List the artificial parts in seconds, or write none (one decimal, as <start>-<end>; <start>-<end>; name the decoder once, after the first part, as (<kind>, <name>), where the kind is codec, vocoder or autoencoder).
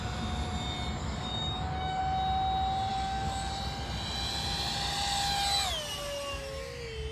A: 1.0-2.0 (codec, DAC); 2.9-3.5